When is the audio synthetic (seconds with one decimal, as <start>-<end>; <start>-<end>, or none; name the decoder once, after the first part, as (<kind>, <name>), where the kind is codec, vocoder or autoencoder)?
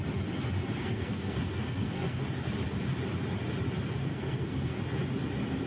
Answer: 0.6-2.2 (codec, SNAC); 4.1-4.8